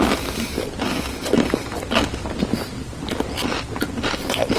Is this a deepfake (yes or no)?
no